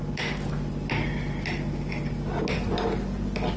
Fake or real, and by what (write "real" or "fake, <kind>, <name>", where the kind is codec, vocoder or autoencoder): real